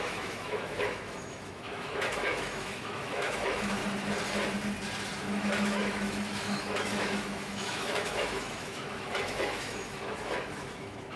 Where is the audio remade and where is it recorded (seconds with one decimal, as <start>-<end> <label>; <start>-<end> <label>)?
0.0-3.8 remade; 3.8-5.2 recorded; 5.2-11.2 remade